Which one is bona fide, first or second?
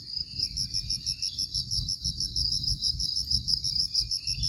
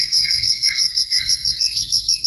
first